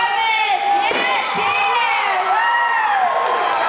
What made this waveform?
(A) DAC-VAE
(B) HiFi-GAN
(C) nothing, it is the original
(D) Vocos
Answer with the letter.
C